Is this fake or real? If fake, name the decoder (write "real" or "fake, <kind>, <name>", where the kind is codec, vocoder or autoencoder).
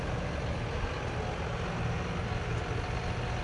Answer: real